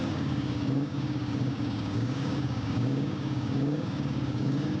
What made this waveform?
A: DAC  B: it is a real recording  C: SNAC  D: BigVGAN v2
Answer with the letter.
A